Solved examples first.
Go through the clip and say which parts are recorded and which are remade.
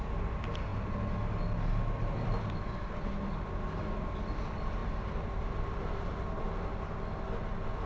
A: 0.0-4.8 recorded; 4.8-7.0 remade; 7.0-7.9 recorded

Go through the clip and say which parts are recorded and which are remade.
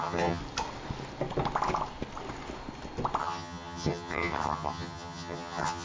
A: 0.0-0.4 remade; 0.4-3.2 recorded; 3.2-5.8 remade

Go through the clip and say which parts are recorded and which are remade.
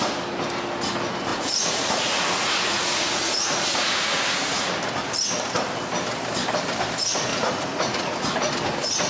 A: 0.0-1.3 recorded; 1.3-4.7 remade; 4.7-7.3 recorded; 7.3-8.5 remade; 8.5-9.1 recorded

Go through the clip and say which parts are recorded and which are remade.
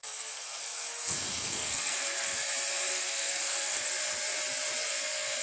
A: 0.0-2.4 remade; 2.4-2.9 recorded; 2.9-3.9 remade; 3.9-4.9 recorded; 4.9-5.4 remade